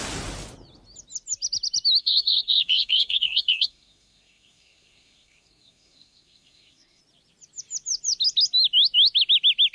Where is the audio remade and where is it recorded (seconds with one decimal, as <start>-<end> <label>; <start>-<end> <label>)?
0.0-2.0 recorded; 2.0-7.0 remade; 7.0-9.7 recorded